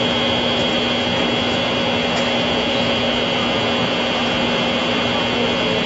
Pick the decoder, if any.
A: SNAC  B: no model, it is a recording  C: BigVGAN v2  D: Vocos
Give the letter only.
B